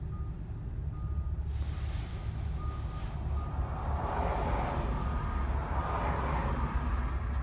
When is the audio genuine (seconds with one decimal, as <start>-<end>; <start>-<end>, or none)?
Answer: 0.0-2.1; 2.6-7.4